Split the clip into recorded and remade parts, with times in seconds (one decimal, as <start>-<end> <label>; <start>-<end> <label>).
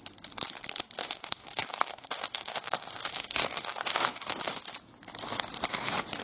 0.0-1.0 recorded; 1.0-4.6 remade; 4.6-6.2 recorded